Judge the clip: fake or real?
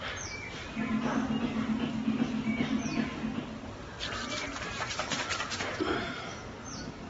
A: real